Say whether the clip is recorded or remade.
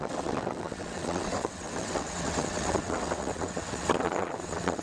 remade